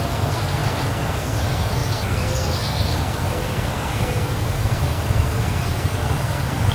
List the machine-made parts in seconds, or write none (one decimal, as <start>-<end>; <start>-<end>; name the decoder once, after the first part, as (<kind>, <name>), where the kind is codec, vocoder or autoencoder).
0.0-6.7 (codec, SNAC)